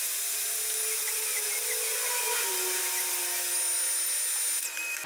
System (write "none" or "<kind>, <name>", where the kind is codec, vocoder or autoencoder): none